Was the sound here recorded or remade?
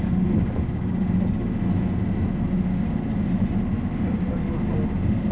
recorded